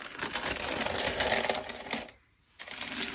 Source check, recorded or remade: recorded